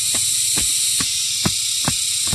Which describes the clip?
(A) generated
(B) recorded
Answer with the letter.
B